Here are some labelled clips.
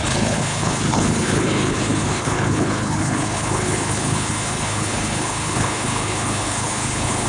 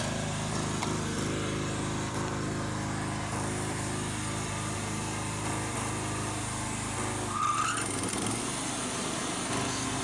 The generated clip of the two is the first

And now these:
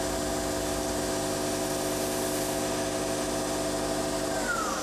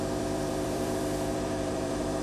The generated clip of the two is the second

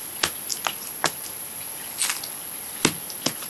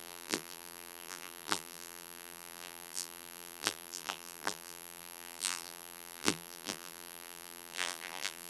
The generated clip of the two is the second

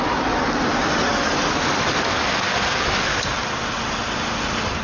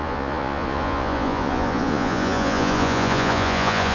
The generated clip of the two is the second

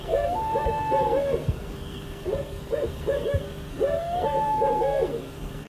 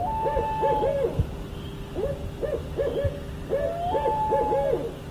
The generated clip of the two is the first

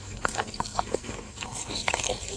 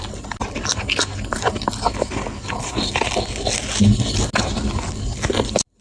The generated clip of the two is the first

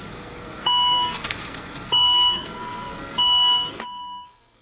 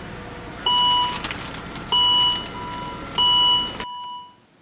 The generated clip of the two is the first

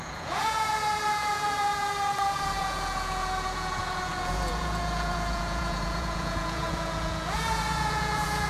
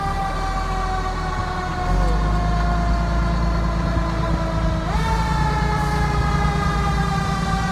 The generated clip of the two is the first